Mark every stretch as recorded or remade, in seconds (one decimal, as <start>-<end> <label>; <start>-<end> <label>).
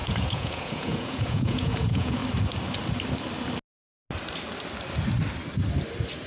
0.0-2.2 remade; 2.2-6.3 recorded